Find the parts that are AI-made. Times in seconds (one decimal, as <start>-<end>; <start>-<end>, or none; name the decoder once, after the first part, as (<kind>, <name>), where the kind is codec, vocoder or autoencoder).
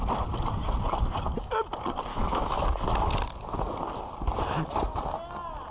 2.1-2.6 (autoencoder, DAC-VAE)